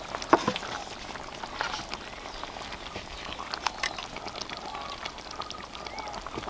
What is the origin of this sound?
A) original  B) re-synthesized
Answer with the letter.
A